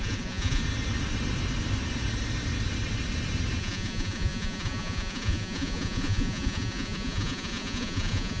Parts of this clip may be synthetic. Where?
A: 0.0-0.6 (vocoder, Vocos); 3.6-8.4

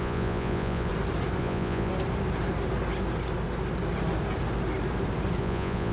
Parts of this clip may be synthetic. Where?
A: 0.0-0.9 (vocoder, Vocos); 1.4-1.9; 5.4-5.9

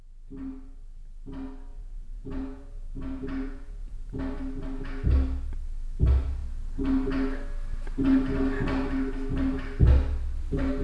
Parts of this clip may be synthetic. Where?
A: 1.7-4.2 (vocoder, Vocos)

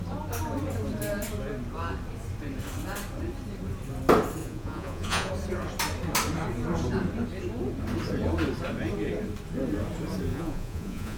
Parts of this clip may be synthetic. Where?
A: 4.4-5.3 (vocoder, Vocos); 10.3-11.2

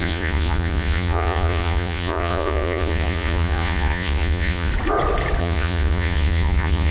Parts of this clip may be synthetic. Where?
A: 0.0-4.7 (vocoder, Vocos); 5.4-6.9